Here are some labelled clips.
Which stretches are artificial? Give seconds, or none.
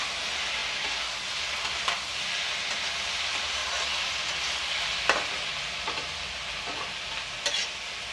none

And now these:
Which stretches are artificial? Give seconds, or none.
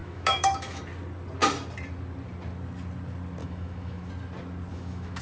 0.0-0.8 (autoencoder, DAC-VAE); 3.4-4.1; 4.7-5.2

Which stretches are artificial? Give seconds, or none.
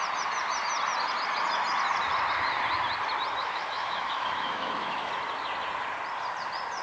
3.4-5.1 (autoencoder, DAC-VAE)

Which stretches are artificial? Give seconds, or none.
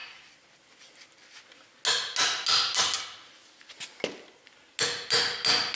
none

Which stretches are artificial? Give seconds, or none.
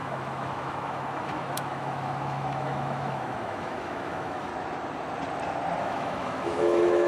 0.0-4.5 (autoencoder, DAC-VAE); 5.8-7.1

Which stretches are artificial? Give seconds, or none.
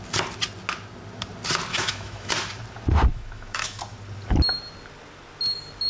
1.7-2.3 (autoencoder, DAC-VAE); 3.1-3.8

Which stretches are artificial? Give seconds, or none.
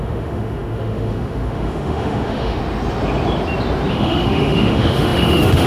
0.0-2.6 (autoencoder, DAC-VAE); 3.9-5.7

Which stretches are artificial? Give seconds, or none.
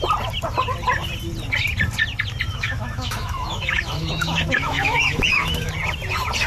2.5-5.7 (autoencoder, DAC-VAE)